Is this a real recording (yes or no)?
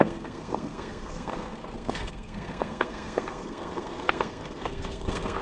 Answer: no